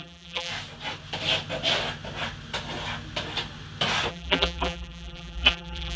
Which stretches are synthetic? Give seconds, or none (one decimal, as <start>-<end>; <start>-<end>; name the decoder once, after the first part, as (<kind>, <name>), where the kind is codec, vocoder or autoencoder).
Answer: 0.0-0.5 (vocoder, BigVGAN v2); 4.1-6.0